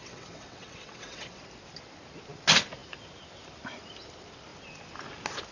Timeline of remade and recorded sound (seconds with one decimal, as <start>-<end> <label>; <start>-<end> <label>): 0.0-1.4 remade; 1.4-5.5 recorded